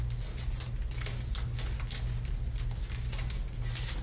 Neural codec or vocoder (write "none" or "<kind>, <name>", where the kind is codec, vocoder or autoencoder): none